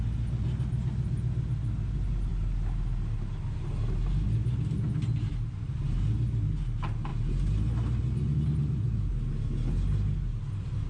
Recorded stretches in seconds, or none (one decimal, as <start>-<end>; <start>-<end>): 0.0-10.9

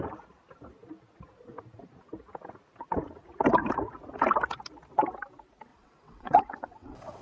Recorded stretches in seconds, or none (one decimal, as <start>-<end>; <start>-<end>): 0.0-5.7

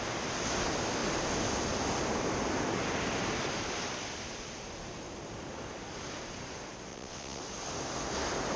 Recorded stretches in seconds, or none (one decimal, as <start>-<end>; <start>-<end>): 0.0-6.9; 7.4-8.6

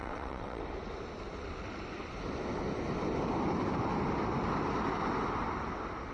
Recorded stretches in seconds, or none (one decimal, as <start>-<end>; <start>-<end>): 0.6-6.1

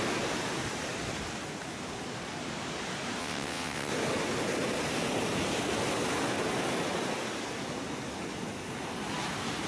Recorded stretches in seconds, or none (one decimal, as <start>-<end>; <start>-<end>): 0.0-3.2; 3.9-9.7